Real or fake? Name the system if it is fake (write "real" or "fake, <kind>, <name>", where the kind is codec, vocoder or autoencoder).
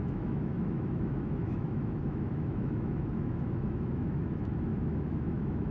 fake, autoencoder, DAC-VAE